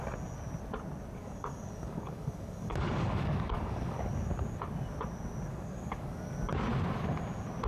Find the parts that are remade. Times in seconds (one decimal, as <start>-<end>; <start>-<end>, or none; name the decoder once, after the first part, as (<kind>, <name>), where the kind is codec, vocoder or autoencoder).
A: 1.2-4.1 (codec, DAC); 5.5-6.3